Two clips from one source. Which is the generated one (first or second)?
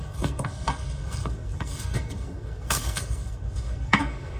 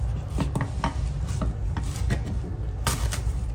first